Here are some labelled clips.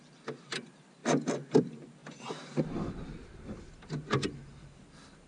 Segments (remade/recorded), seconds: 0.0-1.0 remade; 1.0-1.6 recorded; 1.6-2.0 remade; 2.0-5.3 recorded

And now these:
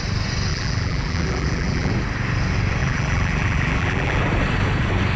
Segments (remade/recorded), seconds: 0.0-0.5 recorded; 0.5-1.9 remade; 1.9-2.8 recorded; 2.8-4.2 remade; 4.2-5.2 recorded